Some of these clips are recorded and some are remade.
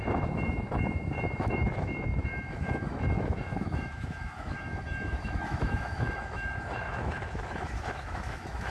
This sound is remade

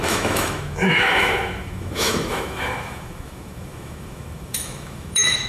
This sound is remade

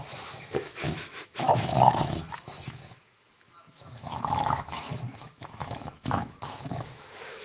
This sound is remade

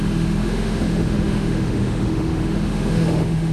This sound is remade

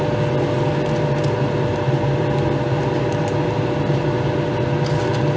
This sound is recorded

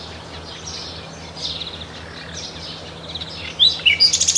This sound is recorded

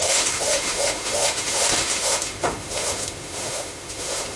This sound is remade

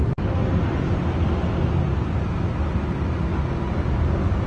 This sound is recorded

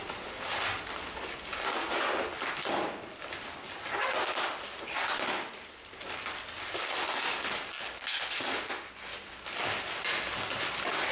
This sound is recorded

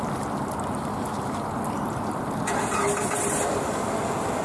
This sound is recorded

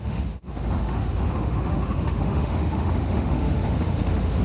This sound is remade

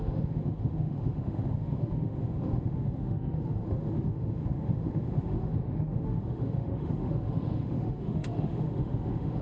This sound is remade